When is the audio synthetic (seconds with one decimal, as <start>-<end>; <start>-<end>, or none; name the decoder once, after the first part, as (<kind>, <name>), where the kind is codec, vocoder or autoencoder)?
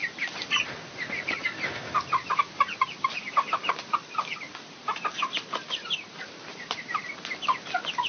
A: 0.0-3.3 (vocoder, BigVGAN v2); 4.8-6.9